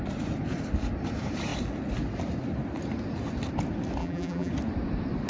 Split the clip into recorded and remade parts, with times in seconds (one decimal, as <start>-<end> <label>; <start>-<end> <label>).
0.0-4.0 recorded; 4.0-4.5 remade; 4.5-5.3 recorded